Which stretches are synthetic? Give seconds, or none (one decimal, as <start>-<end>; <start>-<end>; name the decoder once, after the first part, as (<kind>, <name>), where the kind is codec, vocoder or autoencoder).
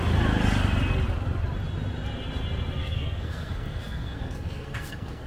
2.8-5.3 (codec, SNAC)